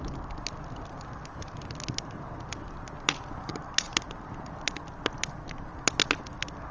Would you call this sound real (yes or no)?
yes